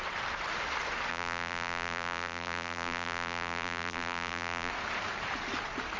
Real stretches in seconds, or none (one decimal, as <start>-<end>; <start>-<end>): 0.0-1.1; 4.7-6.0